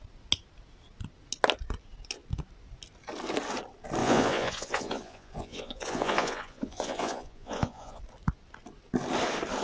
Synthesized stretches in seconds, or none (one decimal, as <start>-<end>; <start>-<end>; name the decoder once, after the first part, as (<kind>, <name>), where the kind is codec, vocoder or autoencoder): 4.0-8.0 (vocoder, Vocos)